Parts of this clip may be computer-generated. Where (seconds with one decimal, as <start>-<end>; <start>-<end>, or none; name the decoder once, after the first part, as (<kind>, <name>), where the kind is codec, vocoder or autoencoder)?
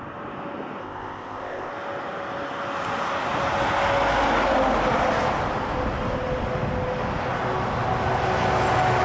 0.8-1.7 (codec, ZipCodec)